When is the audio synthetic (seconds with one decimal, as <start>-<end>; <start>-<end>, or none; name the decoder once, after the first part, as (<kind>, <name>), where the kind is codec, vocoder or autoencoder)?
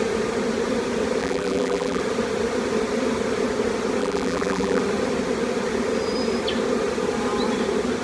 1.2-2.0 (vocoder, BigVGAN v2); 4.0-4.8